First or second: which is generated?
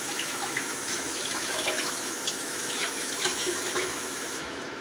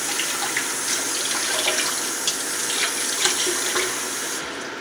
first